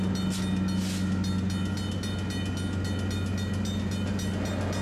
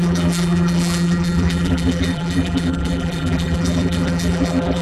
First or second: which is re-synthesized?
second